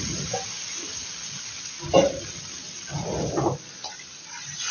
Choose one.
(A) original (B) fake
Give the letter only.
A